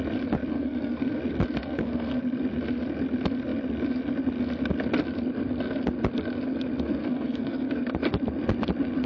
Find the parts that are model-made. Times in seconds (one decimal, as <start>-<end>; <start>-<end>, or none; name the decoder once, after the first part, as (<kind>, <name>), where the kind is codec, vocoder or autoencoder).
0.5-1.2 (codec, SNAC); 1.6-2.2; 7.0-7.7